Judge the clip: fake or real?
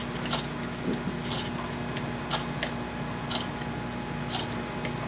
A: real